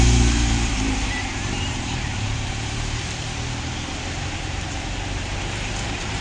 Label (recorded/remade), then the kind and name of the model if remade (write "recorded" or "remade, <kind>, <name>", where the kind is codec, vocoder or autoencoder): remade, vocoder, BigVGAN v2